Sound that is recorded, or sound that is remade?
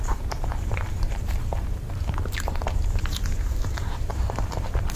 remade